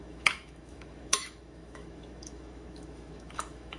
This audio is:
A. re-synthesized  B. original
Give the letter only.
A